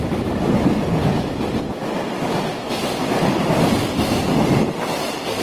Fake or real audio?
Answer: real